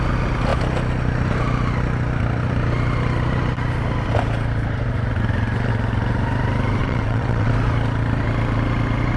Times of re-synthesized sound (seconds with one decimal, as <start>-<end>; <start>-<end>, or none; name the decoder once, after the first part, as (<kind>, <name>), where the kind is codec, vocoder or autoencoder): 6.8-7.5 (vocoder, WaveNeXt)